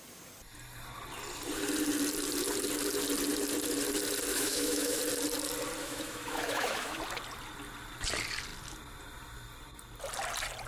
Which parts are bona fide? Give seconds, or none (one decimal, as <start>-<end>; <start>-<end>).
0.0-4.3; 5.0-5.8; 7.0-10.7